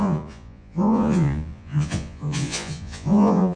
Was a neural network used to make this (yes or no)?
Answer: yes